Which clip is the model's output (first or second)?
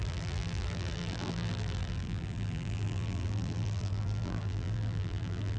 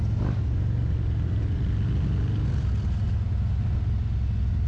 first